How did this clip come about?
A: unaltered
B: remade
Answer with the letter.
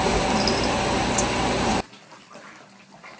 A